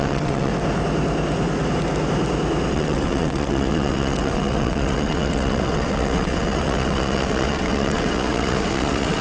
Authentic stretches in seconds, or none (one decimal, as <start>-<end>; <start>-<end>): 0.5-2.7